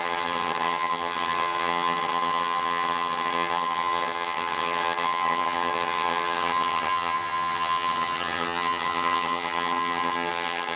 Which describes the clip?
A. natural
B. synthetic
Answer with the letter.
B